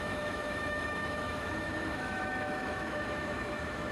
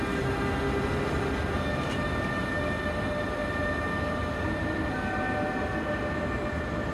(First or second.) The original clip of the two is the second